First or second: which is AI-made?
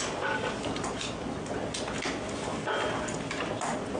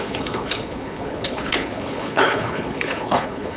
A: second